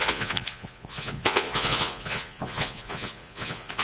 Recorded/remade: remade